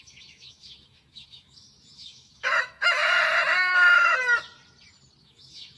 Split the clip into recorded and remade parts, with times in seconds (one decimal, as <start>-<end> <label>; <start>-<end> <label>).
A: 0.0-3.0 remade; 3.0-3.7 recorded; 3.7-4.2 remade; 4.2-5.2 recorded; 5.2-5.8 remade